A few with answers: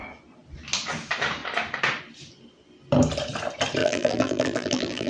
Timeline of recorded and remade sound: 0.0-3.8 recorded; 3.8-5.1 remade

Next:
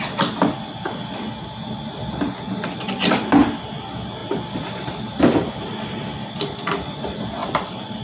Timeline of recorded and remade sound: 0.0-4.2 recorded; 4.2-5.0 remade; 5.0-7.4 recorded; 7.4-8.0 remade

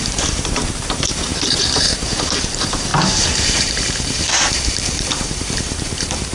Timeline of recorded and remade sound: 0.0-6.3 remade

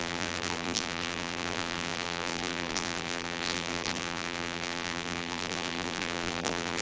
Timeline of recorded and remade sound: 0.0-6.8 remade

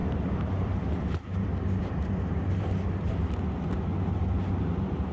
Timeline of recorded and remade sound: 0.0-3.1 remade; 3.1-5.1 recorded

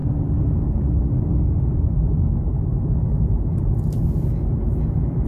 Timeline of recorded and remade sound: 0.0-1.0 remade; 1.0-2.5 recorded; 2.5-3.7 remade; 3.7-5.3 recorded

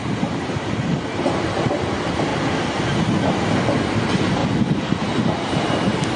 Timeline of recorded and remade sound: 0.0-2.3 remade; 2.3-3.9 recorded; 3.9-4.4 remade; 4.4-5.0 recorded; 5.0-6.2 remade

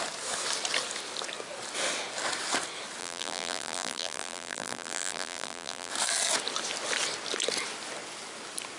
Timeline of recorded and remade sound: 0.0-3.0 recorded; 3.0-5.9 remade; 5.9-8.8 recorded